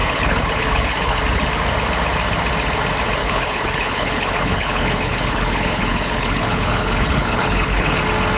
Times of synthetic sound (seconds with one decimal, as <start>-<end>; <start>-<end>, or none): 0.0-1.2; 3.2-8.0

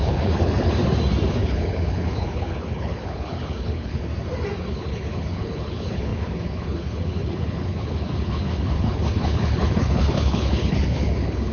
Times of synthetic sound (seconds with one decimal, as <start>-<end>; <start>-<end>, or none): 0.0-0.8; 1.3-4.1; 4.7-11.5

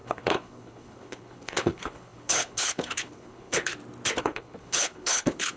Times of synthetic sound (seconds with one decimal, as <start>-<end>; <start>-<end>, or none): 0.0-3.7; 4.2-5.6

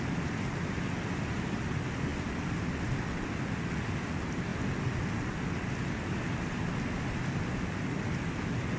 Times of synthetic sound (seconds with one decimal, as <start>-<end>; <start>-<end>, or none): none

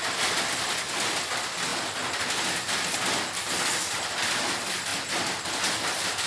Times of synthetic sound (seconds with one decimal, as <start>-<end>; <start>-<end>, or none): none

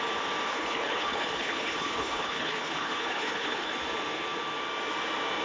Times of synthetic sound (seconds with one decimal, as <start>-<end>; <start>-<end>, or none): 0.5-3.7

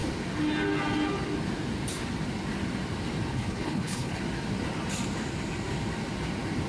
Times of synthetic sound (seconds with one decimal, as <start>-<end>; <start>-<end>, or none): 3.3-4.2

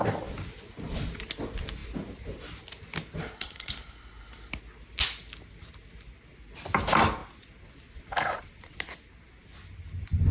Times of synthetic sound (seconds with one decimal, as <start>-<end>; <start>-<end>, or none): 3.2-4.5